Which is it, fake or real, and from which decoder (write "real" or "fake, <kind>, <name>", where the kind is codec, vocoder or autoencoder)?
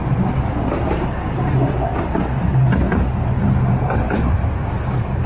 real